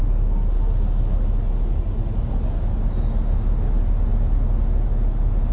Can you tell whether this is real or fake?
real